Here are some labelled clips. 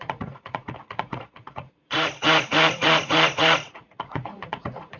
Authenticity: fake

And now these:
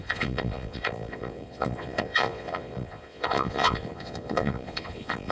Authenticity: fake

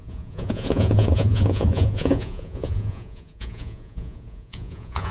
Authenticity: fake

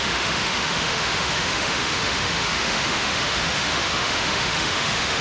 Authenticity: fake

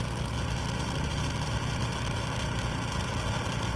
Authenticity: real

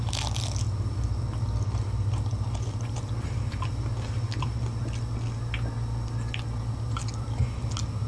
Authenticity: real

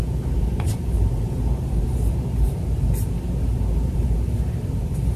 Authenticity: fake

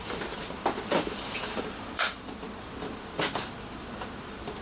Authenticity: fake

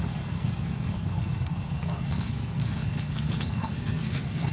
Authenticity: fake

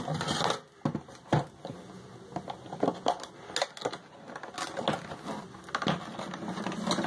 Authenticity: real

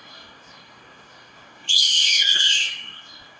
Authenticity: fake